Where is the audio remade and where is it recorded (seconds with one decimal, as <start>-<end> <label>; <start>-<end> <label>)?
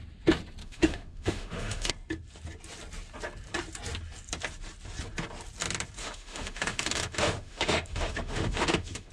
0.0-0.6 recorded; 0.6-1.9 remade; 1.9-6.0 recorded; 6.0-9.1 remade